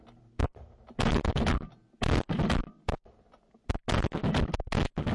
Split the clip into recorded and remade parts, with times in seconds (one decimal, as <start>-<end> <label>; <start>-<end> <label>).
0.0-5.1 recorded